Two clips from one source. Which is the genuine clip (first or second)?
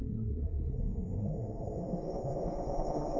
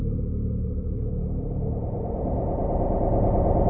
second